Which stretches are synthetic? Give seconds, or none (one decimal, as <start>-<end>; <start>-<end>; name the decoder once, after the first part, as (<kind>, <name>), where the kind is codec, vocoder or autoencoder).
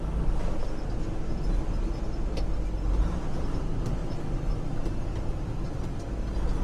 none